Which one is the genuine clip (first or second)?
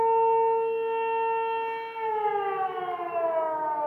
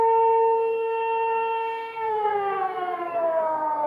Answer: first